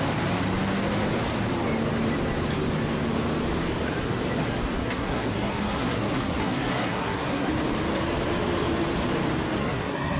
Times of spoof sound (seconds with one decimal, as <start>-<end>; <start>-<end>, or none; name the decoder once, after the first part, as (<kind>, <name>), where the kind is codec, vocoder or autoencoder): 4.8-7.5 (codec, SNAC); 9.6-10.2